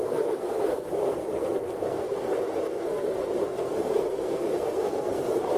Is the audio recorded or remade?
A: remade